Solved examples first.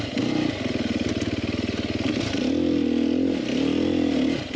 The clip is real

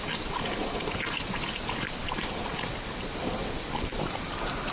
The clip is real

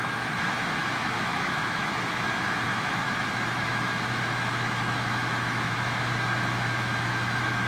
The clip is fake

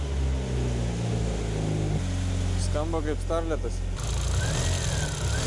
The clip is real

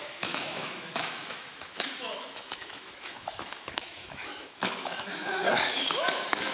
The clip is fake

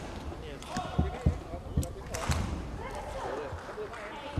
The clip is real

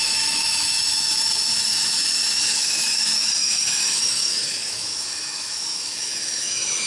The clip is fake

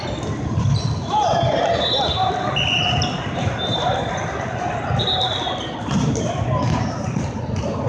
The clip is real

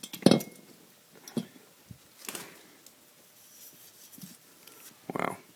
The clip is real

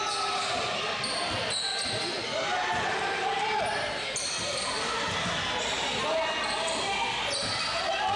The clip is real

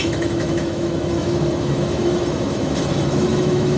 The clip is fake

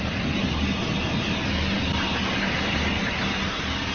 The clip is real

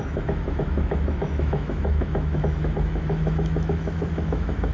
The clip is fake